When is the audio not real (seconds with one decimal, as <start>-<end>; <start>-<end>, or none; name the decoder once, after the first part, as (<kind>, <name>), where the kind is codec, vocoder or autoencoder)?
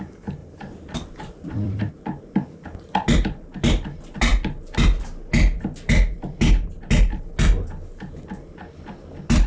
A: 0.4-1.9 (vocoder, BigVGAN v2)